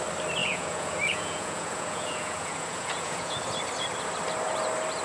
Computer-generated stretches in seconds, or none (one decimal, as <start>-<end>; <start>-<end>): 0.4-3.4